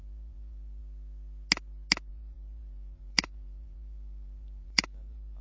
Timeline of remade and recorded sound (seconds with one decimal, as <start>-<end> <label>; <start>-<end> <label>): 0.0-0.8 remade; 0.8-2.1 recorded; 2.1-5.4 remade